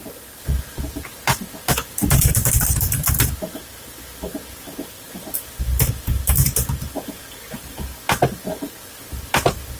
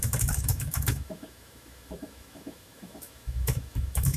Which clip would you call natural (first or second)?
first